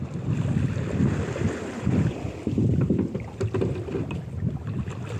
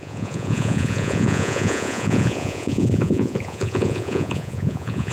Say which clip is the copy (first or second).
second